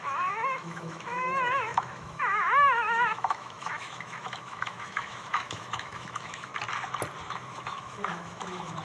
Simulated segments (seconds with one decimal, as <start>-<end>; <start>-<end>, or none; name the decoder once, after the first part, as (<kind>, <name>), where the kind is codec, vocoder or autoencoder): 0.0-6.5 (autoencoder, DAC-VAE); 7.3-8.8